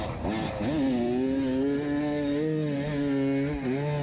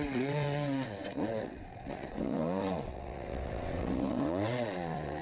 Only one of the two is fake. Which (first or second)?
second